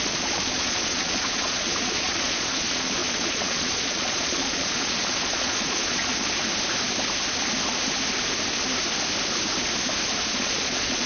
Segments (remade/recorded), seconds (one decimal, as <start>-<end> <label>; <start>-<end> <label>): 0.0-6.2 remade; 6.2-10.3 recorded; 10.3-11.1 remade